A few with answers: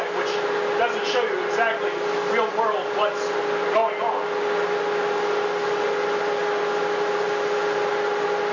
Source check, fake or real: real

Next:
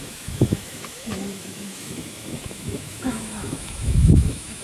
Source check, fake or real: fake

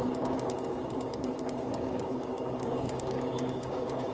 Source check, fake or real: fake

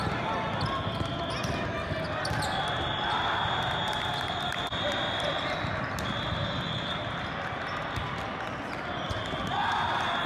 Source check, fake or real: real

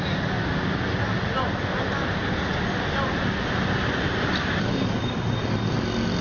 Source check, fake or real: real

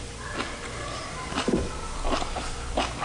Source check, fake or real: fake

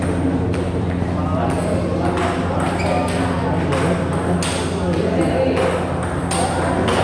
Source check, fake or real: real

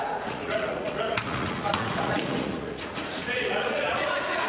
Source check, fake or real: fake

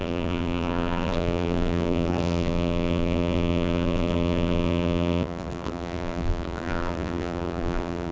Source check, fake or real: fake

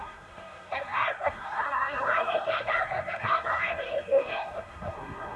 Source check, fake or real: fake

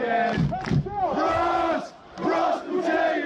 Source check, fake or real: real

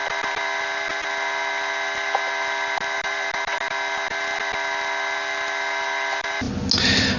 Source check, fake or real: real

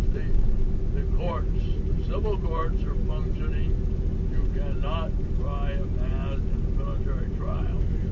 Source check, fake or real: real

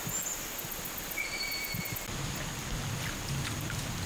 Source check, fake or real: real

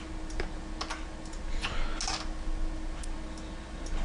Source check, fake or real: real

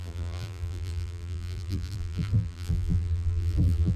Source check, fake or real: fake